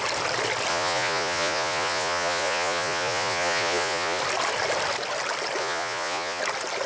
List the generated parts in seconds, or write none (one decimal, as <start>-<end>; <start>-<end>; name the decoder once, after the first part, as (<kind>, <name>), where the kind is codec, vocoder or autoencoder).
0.7-4.2 (vocoder, Vocos); 5.6-6.4